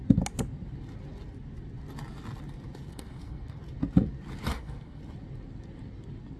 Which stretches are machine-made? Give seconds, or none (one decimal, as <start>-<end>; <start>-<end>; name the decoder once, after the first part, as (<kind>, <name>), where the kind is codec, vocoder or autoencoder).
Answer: 2.9-3.6 (codec, SNAC); 4.5-5.0